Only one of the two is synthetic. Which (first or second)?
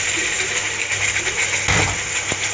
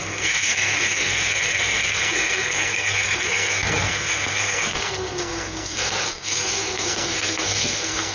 second